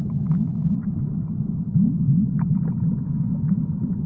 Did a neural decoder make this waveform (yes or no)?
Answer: no